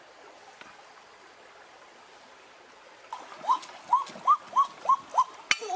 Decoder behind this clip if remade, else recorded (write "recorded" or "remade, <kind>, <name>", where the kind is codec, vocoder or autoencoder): recorded